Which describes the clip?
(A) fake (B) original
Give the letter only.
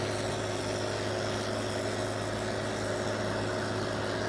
B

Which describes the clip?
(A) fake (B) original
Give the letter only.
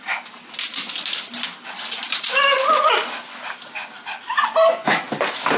B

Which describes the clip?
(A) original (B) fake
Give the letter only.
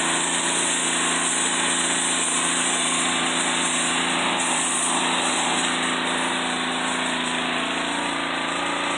A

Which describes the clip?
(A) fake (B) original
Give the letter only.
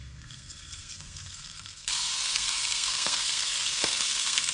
A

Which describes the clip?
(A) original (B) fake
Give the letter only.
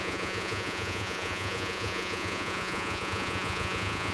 B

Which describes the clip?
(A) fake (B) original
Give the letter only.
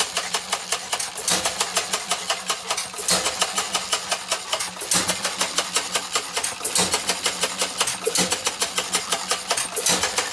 B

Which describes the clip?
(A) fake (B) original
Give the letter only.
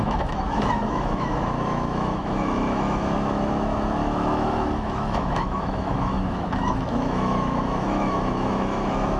A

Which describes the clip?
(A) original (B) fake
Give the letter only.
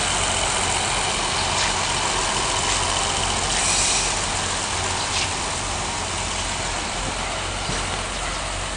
A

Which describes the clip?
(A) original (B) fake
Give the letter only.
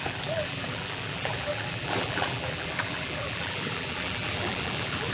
B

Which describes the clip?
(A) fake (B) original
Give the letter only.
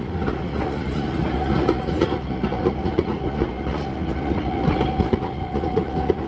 A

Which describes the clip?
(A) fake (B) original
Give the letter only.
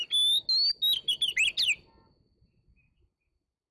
B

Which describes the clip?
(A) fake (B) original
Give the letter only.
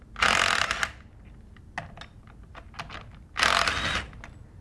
B